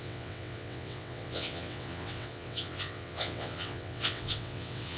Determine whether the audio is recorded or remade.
remade